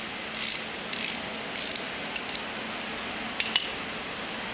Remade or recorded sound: recorded